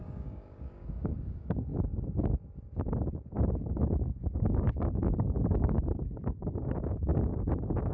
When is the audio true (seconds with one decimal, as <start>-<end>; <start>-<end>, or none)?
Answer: 1.7-3.6; 7.1-7.9